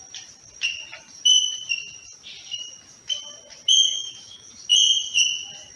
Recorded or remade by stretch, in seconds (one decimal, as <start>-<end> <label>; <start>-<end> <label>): 0.0-3.9 recorded; 3.9-4.5 remade; 4.5-5.8 recorded

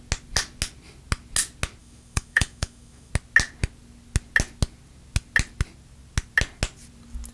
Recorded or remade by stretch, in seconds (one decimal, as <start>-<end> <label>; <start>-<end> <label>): 0.0-1.8 recorded; 1.8-3.1 remade; 3.1-7.3 recorded

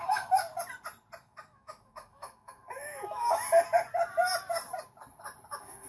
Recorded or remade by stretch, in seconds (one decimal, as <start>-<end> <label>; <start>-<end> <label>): 0.0-0.5 remade; 0.5-1.2 recorded; 1.2-3.4 remade; 3.4-5.5 recorded; 5.5-5.9 remade

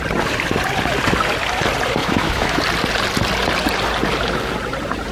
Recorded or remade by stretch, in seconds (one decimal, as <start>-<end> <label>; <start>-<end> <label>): 0.0-2.0 recorded; 2.0-2.6 remade; 2.6-5.1 recorded

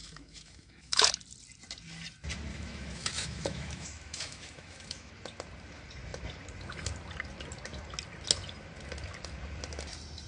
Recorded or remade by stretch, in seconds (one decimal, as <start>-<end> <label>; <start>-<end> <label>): 0.0-1.1 remade; 1.1-2.5 recorded; 2.5-5.1 remade; 5.1-10.3 recorded

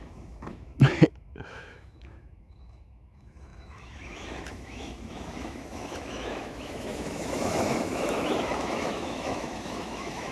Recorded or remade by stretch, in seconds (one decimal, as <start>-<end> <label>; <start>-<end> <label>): 0.0-10.3 remade

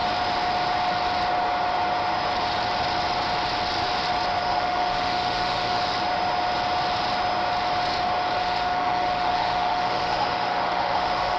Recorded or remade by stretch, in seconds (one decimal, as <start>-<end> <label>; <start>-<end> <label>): 0.0-4.4 recorded; 4.4-5.8 remade; 5.8-8.4 recorded; 8.4-11.4 remade